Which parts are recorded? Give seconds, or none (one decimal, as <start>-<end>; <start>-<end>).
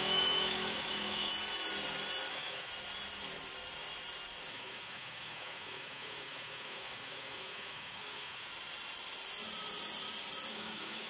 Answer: 1.3-2.3; 2.7-4.5; 8.5-10.5